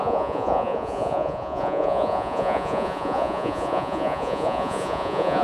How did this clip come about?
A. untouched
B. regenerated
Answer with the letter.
B